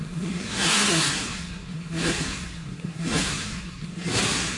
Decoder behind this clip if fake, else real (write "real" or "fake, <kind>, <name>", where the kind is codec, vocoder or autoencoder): fake, codec, SNAC